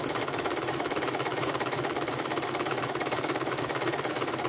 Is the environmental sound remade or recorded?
remade